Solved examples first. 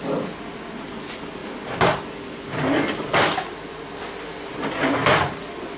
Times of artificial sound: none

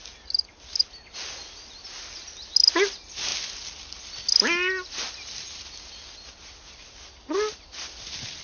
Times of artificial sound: none

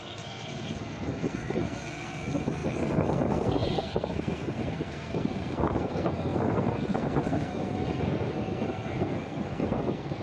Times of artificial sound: 0.0-10.2 (codec, SNAC)

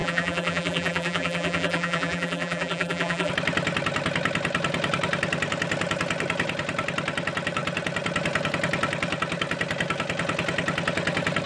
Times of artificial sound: 0.0-3.3 (vocoder, BigVGAN v2)

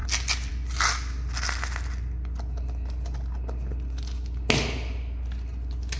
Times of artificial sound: none